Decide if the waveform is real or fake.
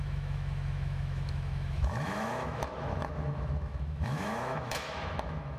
fake